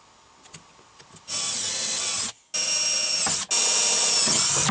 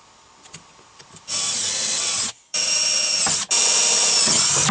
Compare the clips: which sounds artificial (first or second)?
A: second